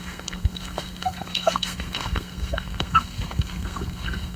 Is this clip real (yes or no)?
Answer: no